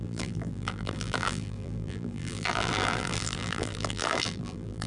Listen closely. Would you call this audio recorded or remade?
remade